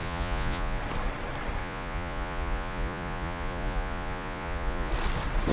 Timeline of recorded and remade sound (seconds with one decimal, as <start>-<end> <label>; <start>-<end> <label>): 0.0-0.8 remade; 0.8-1.6 recorded; 1.6-4.9 remade; 4.9-5.5 recorded